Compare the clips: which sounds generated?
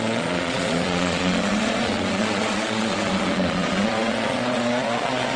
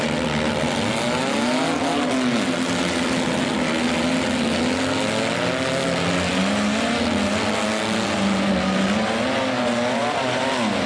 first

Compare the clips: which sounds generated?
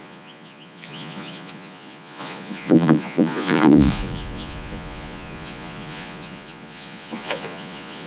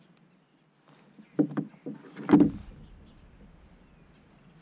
first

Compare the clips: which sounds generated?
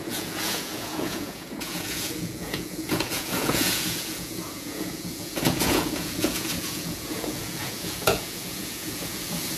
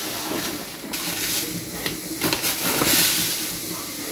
first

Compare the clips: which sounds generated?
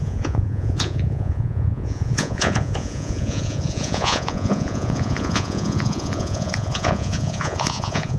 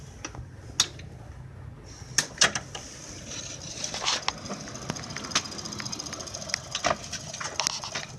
first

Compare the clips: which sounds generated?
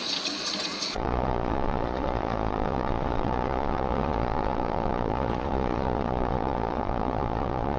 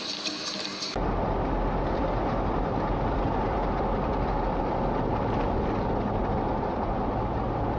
first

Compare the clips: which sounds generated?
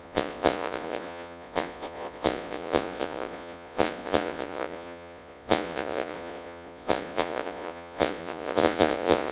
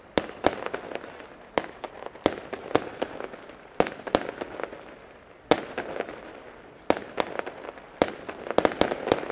first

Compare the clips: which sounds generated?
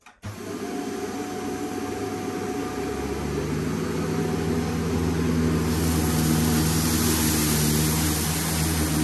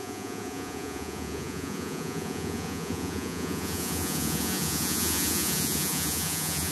second